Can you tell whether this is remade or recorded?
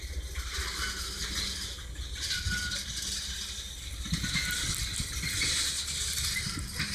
recorded